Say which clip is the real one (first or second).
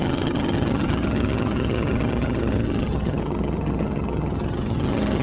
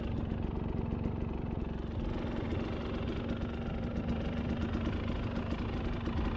second